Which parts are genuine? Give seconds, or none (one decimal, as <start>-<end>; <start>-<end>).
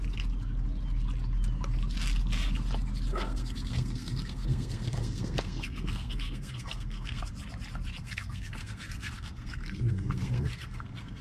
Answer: 0.0-3.1; 7.2-8.0